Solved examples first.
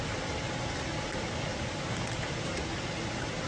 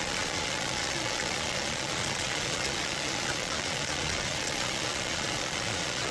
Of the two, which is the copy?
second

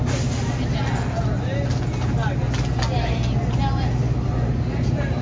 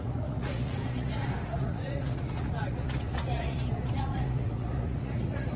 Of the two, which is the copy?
second